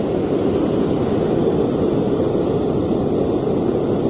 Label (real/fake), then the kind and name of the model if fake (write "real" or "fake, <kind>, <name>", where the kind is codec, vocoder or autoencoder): real